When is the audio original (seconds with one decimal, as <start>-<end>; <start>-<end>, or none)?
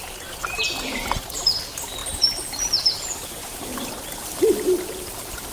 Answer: none